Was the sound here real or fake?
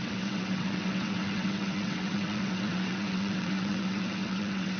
fake